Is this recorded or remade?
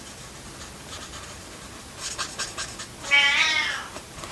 recorded